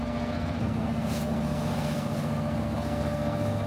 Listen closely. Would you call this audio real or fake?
fake